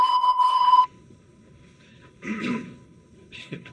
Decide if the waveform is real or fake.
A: fake